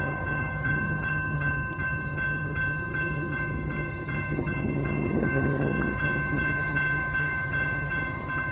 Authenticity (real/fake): fake